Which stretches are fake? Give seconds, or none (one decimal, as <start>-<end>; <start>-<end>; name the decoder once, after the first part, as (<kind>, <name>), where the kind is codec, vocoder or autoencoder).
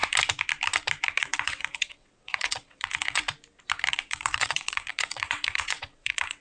1.2-3.2 (vocoder, WaveNeXt); 3.9-6.4